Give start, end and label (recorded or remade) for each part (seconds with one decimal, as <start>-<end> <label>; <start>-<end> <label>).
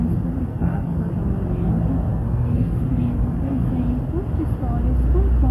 0.0-0.5 recorded; 0.5-1.1 remade; 1.1-2.1 recorded; 2.1-3.7 remade; 3.7-5.5 recorded